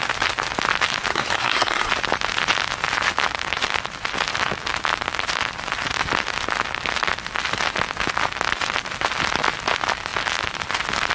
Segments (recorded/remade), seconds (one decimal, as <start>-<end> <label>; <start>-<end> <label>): 0.0-1.1 recorded; 1.1-1.9 remade; 1.9-11.1 recorded